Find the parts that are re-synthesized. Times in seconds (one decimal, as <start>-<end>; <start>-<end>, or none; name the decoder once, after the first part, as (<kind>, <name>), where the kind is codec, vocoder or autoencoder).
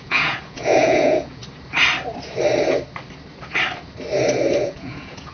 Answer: 0.0-1.4 (vocoder, Vocos); 4.6-5.3